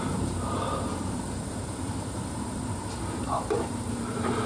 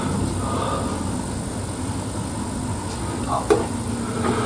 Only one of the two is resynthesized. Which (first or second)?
first